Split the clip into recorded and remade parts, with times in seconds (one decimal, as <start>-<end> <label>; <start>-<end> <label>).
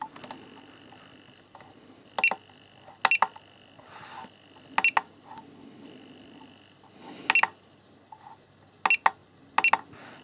0.0-10.2 recorded